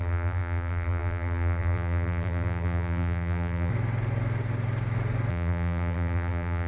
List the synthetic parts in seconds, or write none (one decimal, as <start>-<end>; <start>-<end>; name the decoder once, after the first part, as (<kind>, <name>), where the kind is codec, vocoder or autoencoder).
0.0-3.7 (vocoder, BigVGAN v2); 5.3-6.7